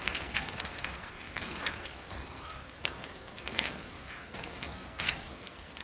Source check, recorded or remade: remade